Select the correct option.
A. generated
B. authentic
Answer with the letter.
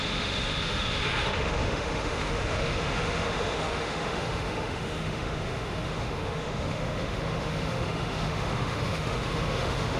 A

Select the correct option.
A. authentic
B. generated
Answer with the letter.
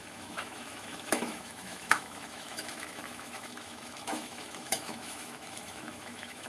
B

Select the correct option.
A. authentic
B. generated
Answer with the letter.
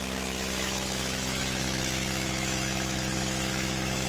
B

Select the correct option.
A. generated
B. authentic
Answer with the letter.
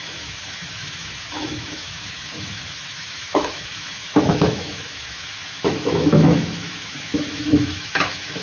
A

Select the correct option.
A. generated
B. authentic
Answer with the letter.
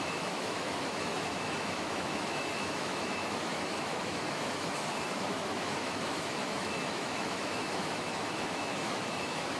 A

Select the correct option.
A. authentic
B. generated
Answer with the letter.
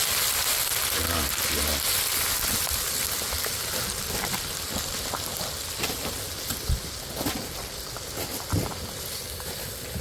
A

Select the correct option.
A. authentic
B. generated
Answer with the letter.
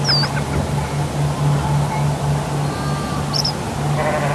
A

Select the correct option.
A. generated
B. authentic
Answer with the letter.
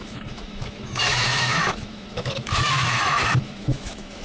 A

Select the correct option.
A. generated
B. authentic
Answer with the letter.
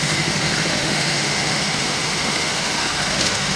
A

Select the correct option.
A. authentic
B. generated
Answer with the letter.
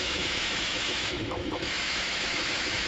B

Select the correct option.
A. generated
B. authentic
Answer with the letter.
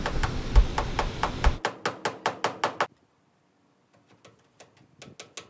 B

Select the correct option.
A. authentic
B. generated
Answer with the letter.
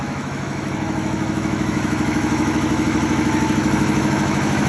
B